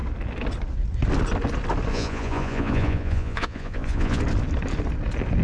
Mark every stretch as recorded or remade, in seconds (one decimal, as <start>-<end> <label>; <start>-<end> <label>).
0.0-1.9 recorded; 1.9-4.2 remade; 4.2-5.4 recorded